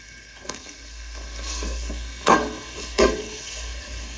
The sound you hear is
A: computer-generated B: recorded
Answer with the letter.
A